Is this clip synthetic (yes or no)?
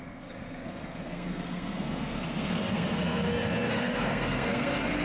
yes